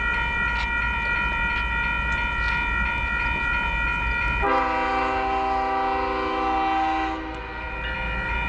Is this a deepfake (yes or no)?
no